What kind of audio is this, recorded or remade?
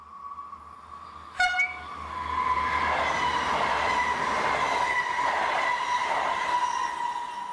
recorded